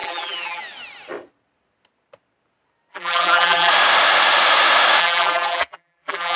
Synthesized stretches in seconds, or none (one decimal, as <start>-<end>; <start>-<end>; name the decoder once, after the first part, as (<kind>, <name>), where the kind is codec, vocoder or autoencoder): 0.0-0.6 (vocoder, BigVGAN v2); 2.9-3.7; 5.0-6.4